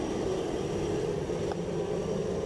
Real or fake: real